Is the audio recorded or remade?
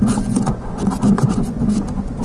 remade